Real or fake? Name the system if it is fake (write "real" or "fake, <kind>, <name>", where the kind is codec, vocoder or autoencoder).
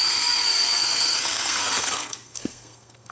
fake, codec, SNAC